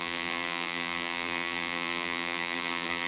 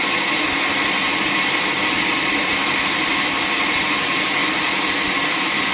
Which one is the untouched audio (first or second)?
second